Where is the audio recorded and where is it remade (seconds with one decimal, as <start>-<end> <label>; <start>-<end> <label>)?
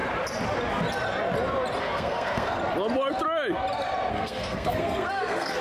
0.0-1.8 recorded; 1.8-2.6 remade; 2.6-4.1 recorded; 4.1-5.6 remade